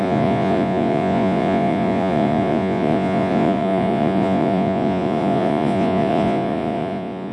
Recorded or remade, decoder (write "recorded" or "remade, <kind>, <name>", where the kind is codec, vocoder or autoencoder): remade, vocoder, Vocos